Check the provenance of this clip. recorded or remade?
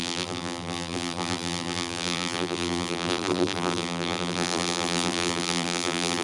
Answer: remade